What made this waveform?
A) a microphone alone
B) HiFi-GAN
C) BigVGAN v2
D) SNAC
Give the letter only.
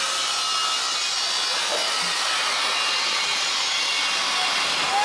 A